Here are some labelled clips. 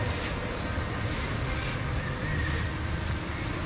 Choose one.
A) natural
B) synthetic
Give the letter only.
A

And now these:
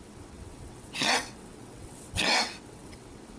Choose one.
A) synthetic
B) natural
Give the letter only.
A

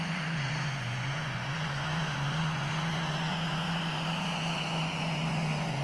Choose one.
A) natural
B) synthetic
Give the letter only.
B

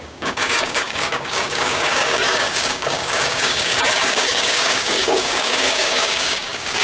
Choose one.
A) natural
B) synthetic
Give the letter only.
B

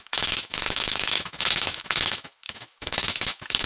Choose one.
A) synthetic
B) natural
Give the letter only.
A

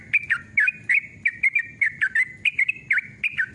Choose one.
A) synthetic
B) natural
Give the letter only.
B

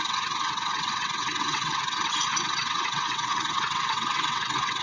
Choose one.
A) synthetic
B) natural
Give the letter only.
A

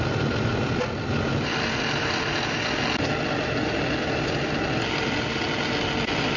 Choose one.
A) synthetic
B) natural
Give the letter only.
B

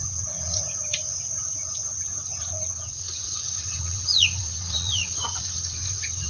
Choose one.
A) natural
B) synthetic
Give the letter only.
B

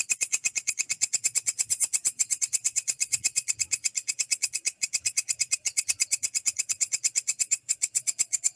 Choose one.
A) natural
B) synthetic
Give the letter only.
B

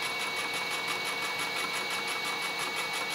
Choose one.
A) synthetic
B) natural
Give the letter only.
B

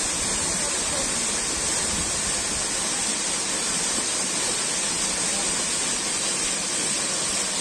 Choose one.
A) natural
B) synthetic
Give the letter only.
A